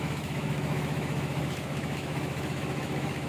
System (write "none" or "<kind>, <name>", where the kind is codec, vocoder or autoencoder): autoencoder, DAC-VAE